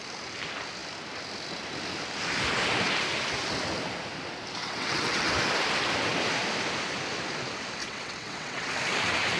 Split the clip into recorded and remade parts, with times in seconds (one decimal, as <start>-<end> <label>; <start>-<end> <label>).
0.0-4.6 recorded; 4.6-5.3 remade; 5.3-7.8 recorded; 7.8-8.7 remade; 8.7-9.4 recorded